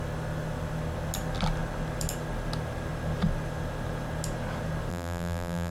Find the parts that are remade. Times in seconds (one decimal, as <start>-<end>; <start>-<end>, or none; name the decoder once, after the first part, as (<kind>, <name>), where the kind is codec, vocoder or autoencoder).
4.9-5.7 (vocoder, BigVGAN v2)